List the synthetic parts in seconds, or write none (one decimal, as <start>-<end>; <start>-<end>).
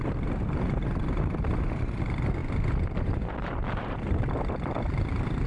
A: 0.0-2.4; 3.3-5.5